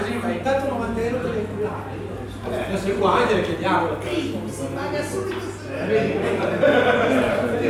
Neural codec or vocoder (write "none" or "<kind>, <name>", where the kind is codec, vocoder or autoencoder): none